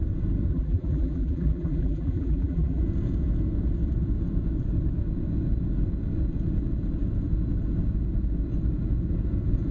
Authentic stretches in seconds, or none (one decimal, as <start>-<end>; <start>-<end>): 0.0-0.5; 2.8-9.7